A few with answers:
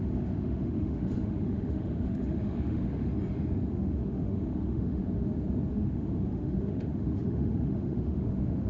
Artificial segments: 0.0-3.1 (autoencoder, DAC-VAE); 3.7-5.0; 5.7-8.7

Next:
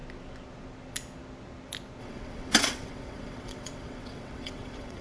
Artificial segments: 2.0-5.0 (vocoder, WaveNeXt)

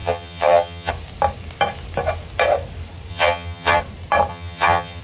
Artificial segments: 0.0-0.9 (vocoder, HiFi-GAN); 3.1-3.8; 4.3-5.0

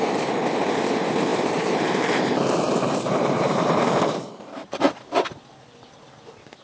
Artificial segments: 1.3-4.8 (vocoder, BigVGAN v2)

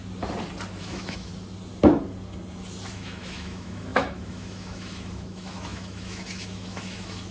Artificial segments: 0.8-1.3 (autoencoder, DAC-VAE); 2.9-7.3

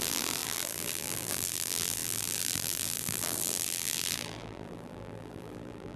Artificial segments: 0.0-6.0 (vocoder, BigVGAN v2)